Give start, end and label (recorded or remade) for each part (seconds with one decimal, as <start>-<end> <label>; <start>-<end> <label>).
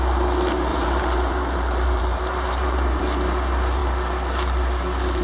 0.0-0.7 recorded; 0.7-3.0 remade; 3.0-5.2 recorded